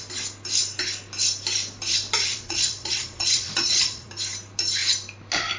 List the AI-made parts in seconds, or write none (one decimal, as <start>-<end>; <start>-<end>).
2.3-4.1